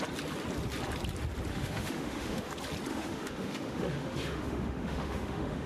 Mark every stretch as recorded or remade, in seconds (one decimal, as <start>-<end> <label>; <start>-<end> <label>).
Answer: 0.0-1.5 recorded; 1.5-2.5 remade; 2.5-2.9 recorded; 2.9-5.7 remade